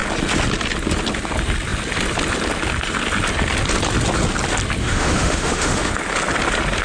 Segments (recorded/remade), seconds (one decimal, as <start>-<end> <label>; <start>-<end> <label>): 0.0-4.8 recorded; 4.8-5.9 remade; 5.9-6.8 recorded